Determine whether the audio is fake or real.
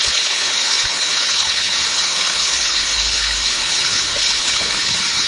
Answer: fake